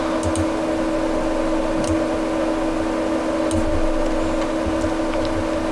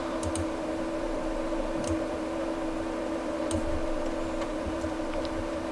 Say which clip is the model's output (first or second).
second